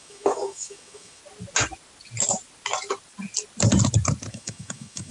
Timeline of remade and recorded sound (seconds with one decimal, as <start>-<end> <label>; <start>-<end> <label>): 0.0-1.2 remade; 1.2-4.3 recorded; 4.3-5.1 remade